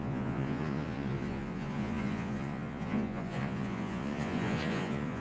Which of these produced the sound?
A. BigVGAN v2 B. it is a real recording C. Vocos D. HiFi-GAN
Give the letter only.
C